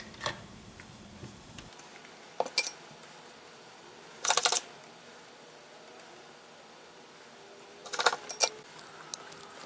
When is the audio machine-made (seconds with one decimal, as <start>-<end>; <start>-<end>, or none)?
none

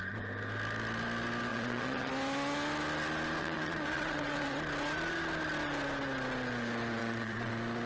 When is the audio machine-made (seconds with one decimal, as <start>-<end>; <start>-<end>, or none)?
1.5-2.1; 3.4-4.5; 7.0-7.5